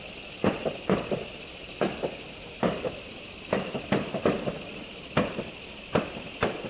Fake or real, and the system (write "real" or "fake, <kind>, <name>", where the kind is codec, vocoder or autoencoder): real